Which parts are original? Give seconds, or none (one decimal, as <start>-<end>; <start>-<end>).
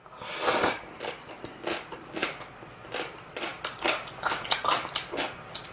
0.0-5.7